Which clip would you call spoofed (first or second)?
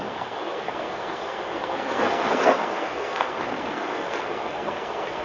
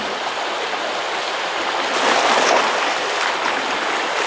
first